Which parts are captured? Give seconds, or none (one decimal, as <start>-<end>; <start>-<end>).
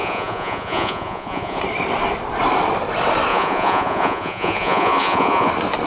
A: 1.6-3.3; 5.5-5.9